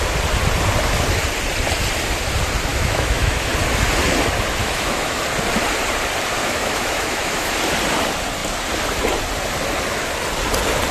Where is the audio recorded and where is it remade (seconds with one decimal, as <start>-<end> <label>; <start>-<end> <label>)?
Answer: 0.0-2.7 recorded; 2.7-3.5 remade; 3.5-4.6 recorded; 4.6-5.2 remade; 5.2-6.4 recorded; 6.4-7.5 remade; 7.5-10.9 recorded